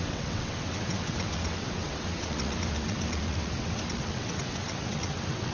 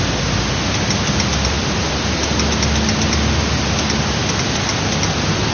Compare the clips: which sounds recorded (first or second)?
second